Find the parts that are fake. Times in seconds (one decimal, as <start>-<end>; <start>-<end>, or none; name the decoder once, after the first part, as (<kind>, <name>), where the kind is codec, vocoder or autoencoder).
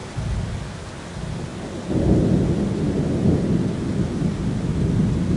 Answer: none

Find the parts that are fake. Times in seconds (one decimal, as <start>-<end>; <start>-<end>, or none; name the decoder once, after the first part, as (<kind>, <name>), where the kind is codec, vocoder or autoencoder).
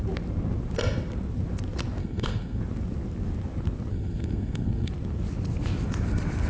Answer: 2.0-2.6 (codec, SNAC); 3.9-4.9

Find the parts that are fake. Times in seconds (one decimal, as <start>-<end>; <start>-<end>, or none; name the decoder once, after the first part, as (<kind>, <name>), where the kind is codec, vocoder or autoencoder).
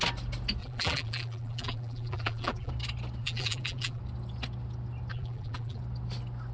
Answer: 0.6-2.7 (vocoder, BigVGAN v2); 3.2-4.0; 5.1-5.8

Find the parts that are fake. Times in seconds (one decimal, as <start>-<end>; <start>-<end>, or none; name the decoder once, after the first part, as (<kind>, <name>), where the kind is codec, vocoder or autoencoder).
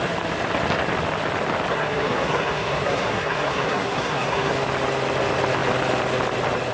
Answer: 1.7-4.5 (codec, SNAC)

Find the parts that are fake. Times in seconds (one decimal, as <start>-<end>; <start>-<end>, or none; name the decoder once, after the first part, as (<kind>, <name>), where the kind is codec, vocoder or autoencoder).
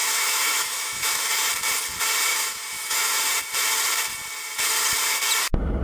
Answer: 0.0-1.5 (autoencoder, DAC-VAE); 2.3-3.1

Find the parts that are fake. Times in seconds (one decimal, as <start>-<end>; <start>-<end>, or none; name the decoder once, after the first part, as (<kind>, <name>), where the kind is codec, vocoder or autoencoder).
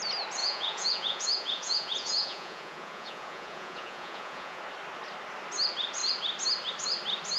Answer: 0.4-4.6 (vocoder, Vocos)